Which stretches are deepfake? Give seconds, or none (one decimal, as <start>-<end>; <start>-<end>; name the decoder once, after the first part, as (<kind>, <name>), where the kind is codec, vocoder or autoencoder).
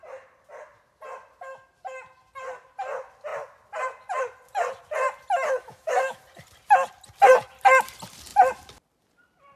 5.6-6.2 (autoencoder, DAC-VAE)